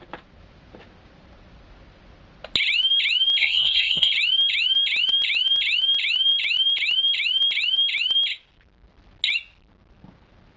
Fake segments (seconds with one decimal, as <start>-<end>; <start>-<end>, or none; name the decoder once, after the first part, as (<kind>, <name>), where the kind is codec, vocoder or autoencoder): 3.4-4.1 (codec, SNAC)